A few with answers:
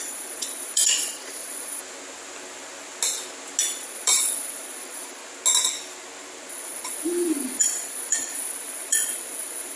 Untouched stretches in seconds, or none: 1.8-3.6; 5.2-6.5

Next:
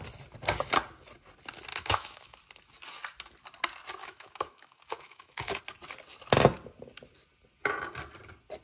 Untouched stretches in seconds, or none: 0.0-1.7; 2.4-4.0; 5.6-8.6

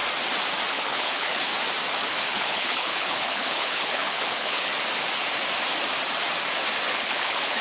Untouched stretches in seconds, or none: 0.0-0.7; 1.5-2.0; 4.7-6.9

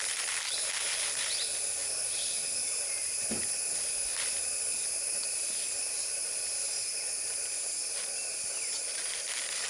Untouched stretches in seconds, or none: 0.0-9.7

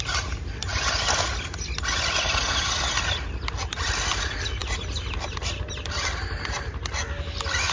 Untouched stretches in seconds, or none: 0.0-7.7

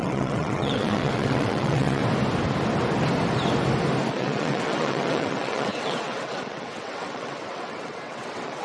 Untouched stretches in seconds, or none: 2.0-4.1

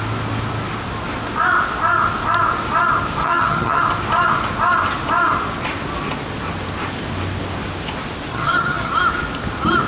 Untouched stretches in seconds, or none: 0.0-3.2; 3.8-8.3; 8.9-9.9